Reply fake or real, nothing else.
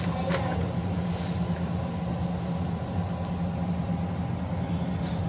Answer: real